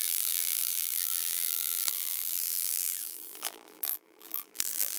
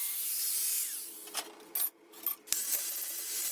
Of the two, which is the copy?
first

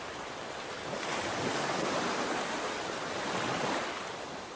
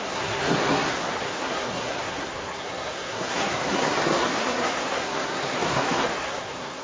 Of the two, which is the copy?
second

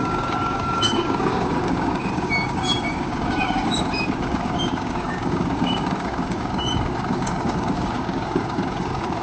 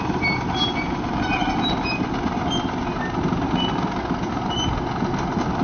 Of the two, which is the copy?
first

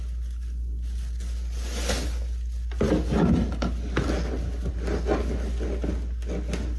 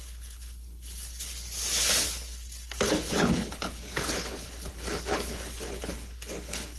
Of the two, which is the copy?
second